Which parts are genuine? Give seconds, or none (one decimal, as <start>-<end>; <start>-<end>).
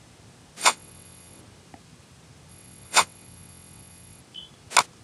0.0-0.6; 1.4-2.5; 4.2-5.0